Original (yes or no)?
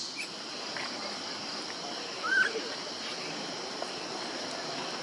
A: no